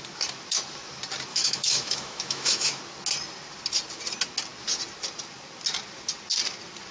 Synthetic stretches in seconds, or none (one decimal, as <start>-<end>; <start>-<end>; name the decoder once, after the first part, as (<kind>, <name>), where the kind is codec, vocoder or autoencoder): 1.3-2.8 (autoencoder, DAC-VAE)